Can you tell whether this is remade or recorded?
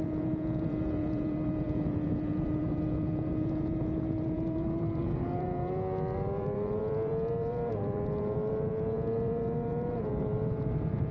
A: remade